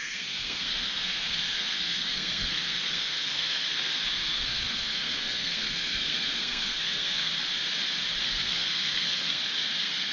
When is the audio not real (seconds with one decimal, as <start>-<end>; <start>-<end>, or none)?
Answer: 0.0-7.3; 8.2-10.1